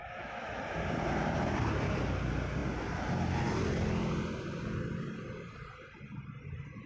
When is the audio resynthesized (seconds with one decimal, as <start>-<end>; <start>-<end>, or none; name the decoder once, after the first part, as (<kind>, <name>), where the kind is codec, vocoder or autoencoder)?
0.0-0.6 (autoencoder, DAC-VAE)